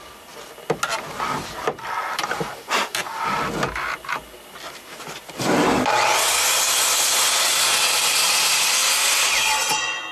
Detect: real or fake real